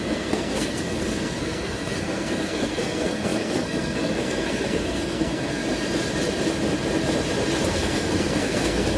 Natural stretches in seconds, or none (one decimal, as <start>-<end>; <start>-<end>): 5.6-7.7